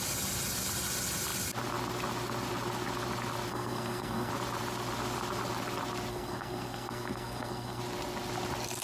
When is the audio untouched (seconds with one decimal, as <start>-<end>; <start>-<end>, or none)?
0.0-3.5; 4.3-6.1; 7.8-8.8